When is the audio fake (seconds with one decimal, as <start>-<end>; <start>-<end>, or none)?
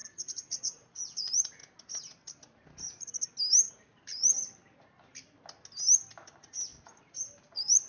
0.0-1.6; 3.7-4.6; 6.0-7.9